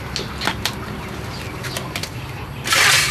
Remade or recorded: recorded